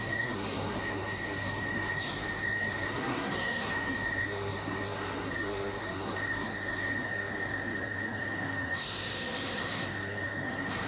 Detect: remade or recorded remade